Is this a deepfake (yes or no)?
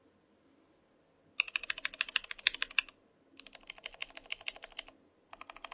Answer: no